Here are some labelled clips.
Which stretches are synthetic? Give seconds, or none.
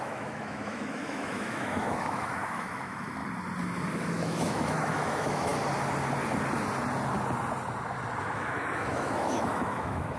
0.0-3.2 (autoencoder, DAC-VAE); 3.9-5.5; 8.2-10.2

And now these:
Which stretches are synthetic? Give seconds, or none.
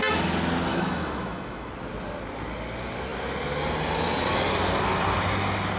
0.7-1.7 (autoencoder, DAC-VAE)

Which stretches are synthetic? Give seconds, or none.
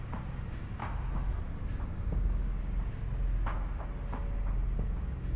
0.8-1.4 (autoencoder, DAC-VAE)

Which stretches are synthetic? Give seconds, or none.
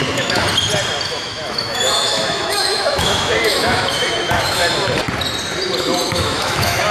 0.0-0.4 (autoencoder, DAC-VAE); 1.1-4.6; 6.1-6.9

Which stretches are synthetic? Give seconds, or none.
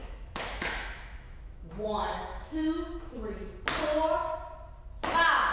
0.0-3.3 (autoencoder, DAC-VAE)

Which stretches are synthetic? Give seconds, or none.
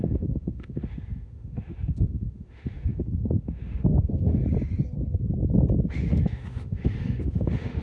0.0-4.4 (autoencoder, DAC-VAE); 5.9-7.8